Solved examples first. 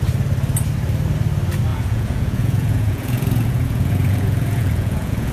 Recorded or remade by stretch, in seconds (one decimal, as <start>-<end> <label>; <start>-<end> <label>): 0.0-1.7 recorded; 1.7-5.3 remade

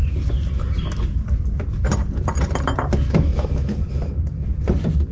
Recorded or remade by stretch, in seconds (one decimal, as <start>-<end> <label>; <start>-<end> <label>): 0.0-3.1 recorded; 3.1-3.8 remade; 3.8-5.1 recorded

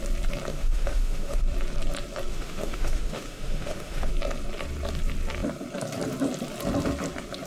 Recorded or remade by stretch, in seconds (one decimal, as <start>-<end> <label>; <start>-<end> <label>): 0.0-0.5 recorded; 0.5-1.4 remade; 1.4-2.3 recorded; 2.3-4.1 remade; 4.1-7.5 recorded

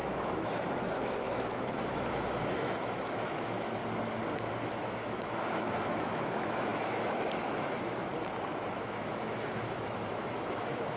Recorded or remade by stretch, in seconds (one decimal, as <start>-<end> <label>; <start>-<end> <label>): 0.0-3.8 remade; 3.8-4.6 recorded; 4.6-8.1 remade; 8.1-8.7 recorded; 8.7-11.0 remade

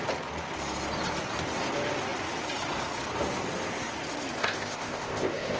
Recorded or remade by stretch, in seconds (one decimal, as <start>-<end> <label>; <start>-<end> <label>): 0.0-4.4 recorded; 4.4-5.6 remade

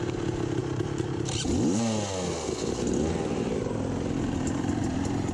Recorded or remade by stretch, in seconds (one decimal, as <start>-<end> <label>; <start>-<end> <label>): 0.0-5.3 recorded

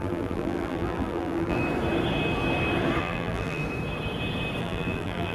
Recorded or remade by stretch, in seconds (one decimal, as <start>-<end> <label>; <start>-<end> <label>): 0.0-1.6 remade; 1.6-3.0 recorded; 3.0-3.6 remade; 3.6-4.6 recorded; 4.6-5.3 remade

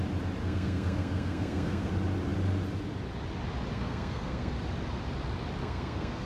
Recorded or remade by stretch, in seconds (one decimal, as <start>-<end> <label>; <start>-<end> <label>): 0.0-0.4 recorded; 0.4-1.9 remade; 1.9-3.7 recorded; 3.7-4.5 remade; 4.5-5.6 recorded; 5.6-6.3 remade